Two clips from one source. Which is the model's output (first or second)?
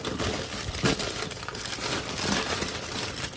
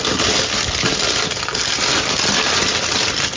first